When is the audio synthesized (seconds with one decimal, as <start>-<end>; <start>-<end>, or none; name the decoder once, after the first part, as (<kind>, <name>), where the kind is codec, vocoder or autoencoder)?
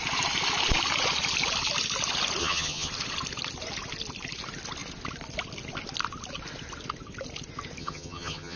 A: 2.4-2.9 (vocoder, HiFi-GAN); 7.8-8.6